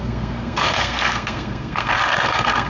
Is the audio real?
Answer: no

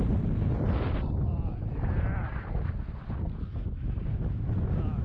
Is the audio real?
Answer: yes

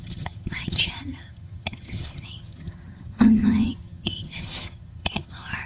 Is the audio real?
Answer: no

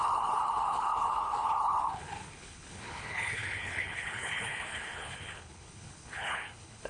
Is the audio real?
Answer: no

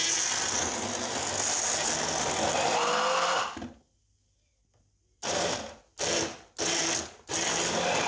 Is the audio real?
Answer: yes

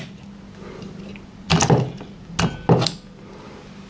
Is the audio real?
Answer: yes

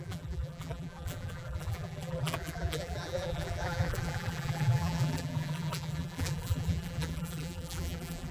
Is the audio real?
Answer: no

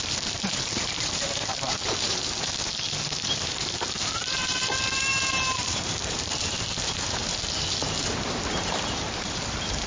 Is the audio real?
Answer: no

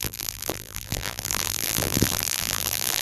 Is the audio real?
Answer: no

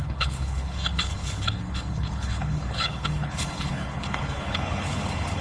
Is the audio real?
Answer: no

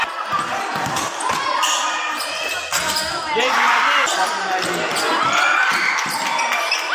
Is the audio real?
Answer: yes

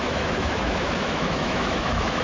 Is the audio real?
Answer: no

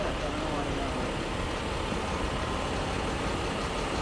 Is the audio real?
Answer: yes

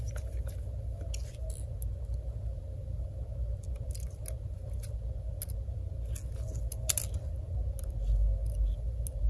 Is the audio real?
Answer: yes